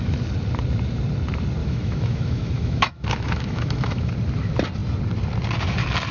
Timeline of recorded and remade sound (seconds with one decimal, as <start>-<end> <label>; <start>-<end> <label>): 0.0-1.6 recorded; 1.6-4.1 remade; 4.1-6.1 recorded

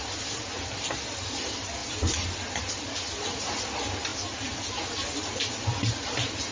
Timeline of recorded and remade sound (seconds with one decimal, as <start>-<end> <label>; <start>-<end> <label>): 0.0-6.5 recorded